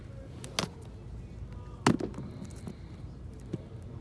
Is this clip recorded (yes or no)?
yes